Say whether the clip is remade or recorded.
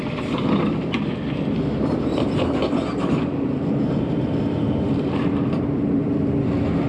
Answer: remade